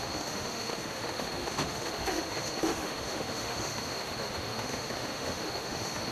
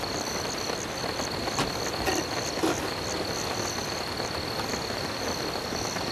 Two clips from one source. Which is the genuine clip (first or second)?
second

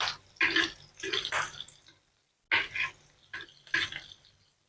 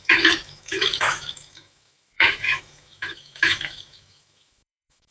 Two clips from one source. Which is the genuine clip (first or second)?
first